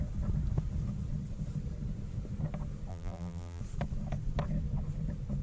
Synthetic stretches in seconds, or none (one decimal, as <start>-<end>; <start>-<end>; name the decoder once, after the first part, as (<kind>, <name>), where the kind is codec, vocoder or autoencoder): 2.9-3.6 (vocoder, BigVGAN v2)

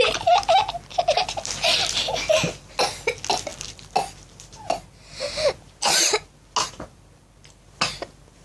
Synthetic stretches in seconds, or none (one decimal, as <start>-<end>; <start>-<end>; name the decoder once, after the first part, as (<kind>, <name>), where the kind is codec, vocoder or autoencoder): none

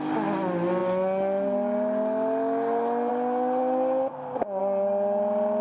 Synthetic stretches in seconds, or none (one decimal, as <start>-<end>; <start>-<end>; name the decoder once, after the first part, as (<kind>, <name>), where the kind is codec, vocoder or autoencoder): none

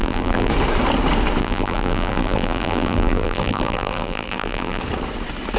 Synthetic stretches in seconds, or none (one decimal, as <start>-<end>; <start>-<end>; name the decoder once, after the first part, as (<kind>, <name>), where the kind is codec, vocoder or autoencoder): 0.0-0.5 (vocoder, BigVGAN v2); 1.4-4.8

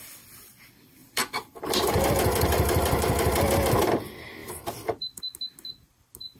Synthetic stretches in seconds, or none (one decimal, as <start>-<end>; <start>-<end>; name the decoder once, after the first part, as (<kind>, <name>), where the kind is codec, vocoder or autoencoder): 1.0-3.8 (vocoder, BigVGAN v2); 4.4-5.2

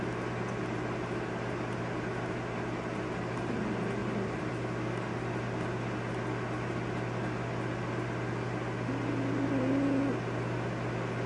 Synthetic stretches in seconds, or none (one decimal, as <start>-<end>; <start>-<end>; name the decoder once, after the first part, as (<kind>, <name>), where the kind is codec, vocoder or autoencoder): 4.0-4.5 (vocoder, BigVGAN v2)

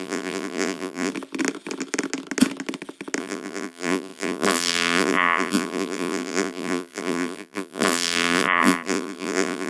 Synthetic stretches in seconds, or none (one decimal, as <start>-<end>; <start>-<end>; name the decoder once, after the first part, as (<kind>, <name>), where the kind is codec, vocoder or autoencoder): 0.0-1.1 (vocoder, BigVGAN v2); 3.2-9.7

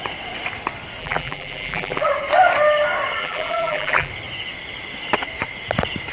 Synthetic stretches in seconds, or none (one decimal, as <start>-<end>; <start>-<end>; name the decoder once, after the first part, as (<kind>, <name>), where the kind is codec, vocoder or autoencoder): 1.0-2.1 (vocoder, BigVGAN v2); 3.2-4.1